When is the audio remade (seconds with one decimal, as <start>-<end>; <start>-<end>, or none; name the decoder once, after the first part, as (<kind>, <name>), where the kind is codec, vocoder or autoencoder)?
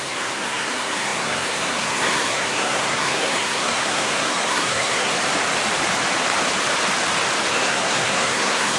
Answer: 0.0-5.1 (codec, SNAC); 7.5-8.8